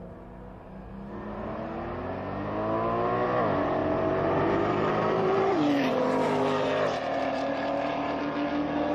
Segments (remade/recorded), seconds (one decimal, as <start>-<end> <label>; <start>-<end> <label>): 0.0-3.8 recorded; 3.8-8.2 remade; 8.2-8.9 recorded